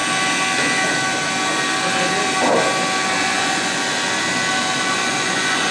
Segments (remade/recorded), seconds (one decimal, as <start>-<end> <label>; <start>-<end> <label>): 0.0-3.2 recorded; 3.2-3.8 remade; 3.8-4.8 recorded; 4.8-5.7 remade